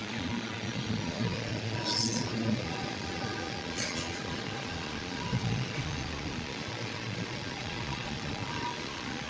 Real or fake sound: fake